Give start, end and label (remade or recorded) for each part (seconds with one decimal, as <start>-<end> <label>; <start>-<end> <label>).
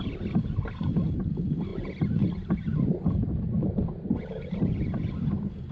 0.0-5.7 recorded